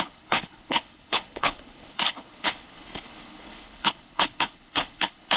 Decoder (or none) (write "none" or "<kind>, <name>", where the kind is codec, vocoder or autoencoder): codec, HILCodec